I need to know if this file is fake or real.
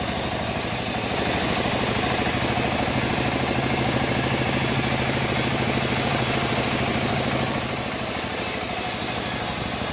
real